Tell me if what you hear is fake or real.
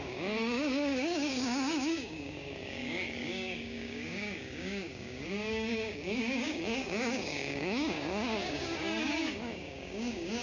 fake